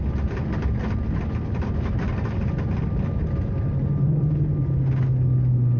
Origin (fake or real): real